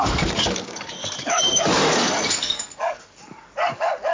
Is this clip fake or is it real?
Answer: fake